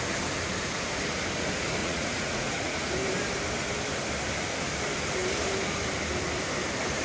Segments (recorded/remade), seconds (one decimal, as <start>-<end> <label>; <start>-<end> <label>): 0.0-1.8 recorded; 1.8-2.9 remade; 2.9-7.0 recorded

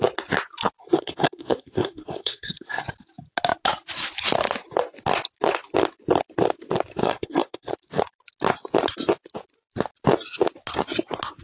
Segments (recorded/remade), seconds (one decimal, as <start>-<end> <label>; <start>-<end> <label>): 0.0-0.8 recorded; 0.8-2.8 remade; 2.8-7.0 recorded; 7.0-7.7 remade; 7.7-11.4 recorded

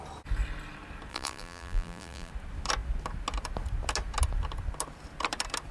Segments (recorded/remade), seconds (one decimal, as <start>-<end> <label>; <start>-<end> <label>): 0.0-1.1 recorded; 1.1-2.3 remade; 2.3-5.7 recorded

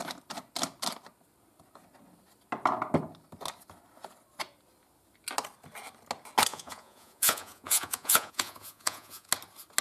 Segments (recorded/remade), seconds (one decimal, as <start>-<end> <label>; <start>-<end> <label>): 0.0-6.5 recorded; 6.5-9.3 remade; 9.3-9.8 recorded

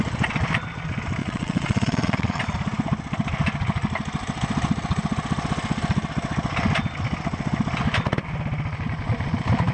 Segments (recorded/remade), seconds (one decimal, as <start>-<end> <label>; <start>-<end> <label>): 0.0-1.2 recorded; 1.2-2.4 remade; 2.4-9.7 recorded

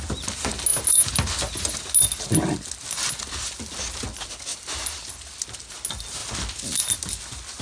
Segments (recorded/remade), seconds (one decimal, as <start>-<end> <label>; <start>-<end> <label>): 0.0-4.5 recorded; 4.5-5.0 remade; 5.0-7.6 recorded

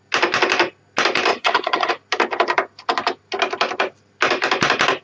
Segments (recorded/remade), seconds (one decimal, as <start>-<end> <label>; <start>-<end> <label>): 0.0-1.3 recorded; 1.3-1.9 remade; 1.9-5.0 recorded

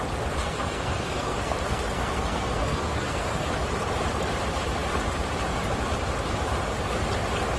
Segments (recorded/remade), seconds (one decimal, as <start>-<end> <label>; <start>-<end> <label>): 0.0-0.4 recorded; 0.4-3.5 remade; 3.5-7.6 recorded